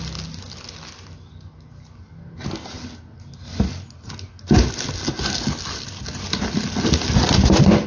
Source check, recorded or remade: recorded